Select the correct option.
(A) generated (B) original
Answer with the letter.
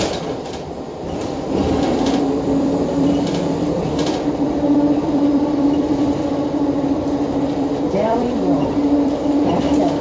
A